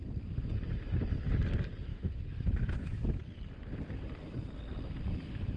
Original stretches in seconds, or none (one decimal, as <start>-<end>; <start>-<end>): 0.0-1.9; 3.2-5.6